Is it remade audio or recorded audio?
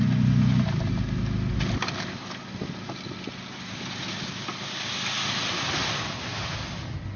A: recorded